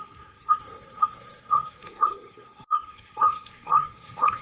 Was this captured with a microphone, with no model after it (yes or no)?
no